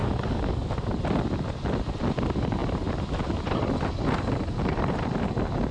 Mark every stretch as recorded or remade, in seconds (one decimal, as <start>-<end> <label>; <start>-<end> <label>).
0.0-0.7 remade; 0.7-5.7 recorded